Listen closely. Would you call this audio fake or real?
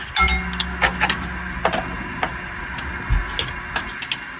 real